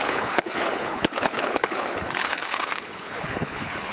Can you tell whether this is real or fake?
fake